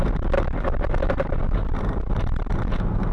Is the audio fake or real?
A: real